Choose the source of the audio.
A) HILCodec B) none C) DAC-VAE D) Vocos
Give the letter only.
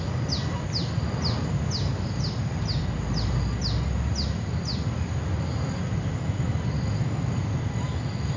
B